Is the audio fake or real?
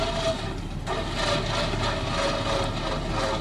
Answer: real